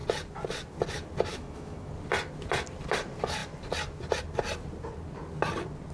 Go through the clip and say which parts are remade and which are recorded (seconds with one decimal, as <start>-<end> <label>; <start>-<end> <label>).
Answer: 0.0-1.3 recorded; 1.3-1.9 remade; 1.9-5.9 recorded